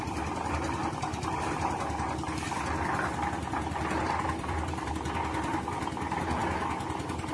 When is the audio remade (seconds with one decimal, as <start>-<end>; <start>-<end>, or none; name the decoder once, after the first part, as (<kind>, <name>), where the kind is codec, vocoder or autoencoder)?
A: 0.0-0.5 (vocoder, BigVGAN v2); 1.1-4.9